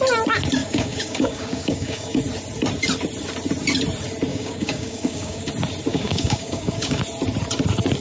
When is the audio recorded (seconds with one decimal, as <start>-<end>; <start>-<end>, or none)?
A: 0.0-0.6; 2.2-4.3; 5.5-5.9; 7.0-8.0